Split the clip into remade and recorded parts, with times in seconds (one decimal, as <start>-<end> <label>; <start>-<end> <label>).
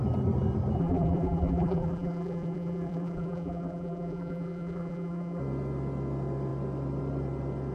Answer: 0.0-0.8 recorded; 0.8-5.4 remade; 5.4-7.7 recorded